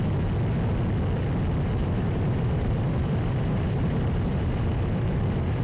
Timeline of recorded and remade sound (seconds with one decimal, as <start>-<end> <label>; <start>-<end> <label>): 0.0-1.8 recorded; 1.8-5.6 remade